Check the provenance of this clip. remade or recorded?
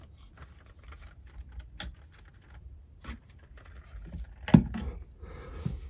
recorded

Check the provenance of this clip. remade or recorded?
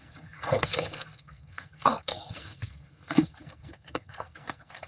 remade